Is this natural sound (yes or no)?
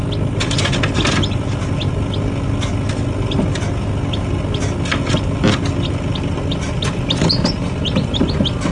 yes